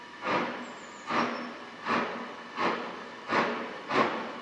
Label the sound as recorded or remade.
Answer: recorded